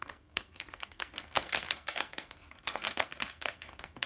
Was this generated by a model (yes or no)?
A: yes